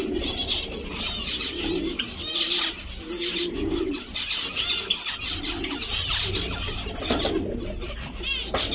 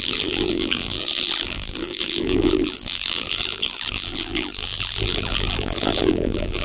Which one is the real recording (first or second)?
first